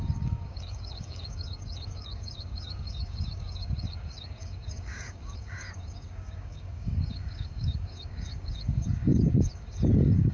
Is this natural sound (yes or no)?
no